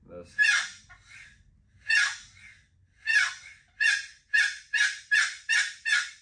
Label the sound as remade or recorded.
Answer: recorded